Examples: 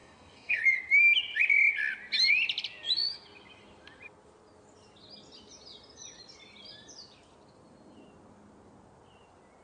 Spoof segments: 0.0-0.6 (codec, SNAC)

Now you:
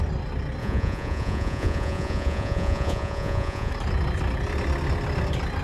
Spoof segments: 0.6-3.7 (vocoder, Vocos)

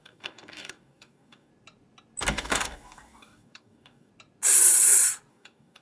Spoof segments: 0.0-1.5 (codec, DAC); 2.3-4.1; 5.3-5.8

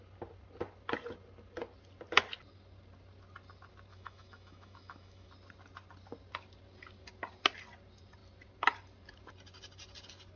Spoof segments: 3.9-5.3 (autoencoder, DAC-VAE)

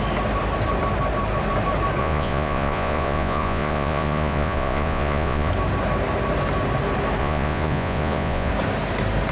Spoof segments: 2.0-5.5 (vocoder, Vocos); 7.2-8.5

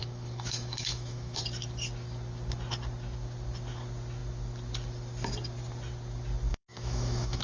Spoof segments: 0.0-1.4 (autoencoder, DAC-VAE); 6.5-7.4